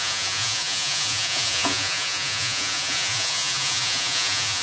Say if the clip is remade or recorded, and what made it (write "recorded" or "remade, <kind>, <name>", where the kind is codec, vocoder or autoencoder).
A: remade, vocoder, Vocos